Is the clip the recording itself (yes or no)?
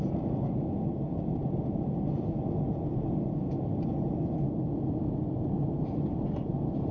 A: yes